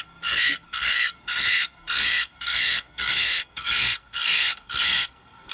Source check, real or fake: fake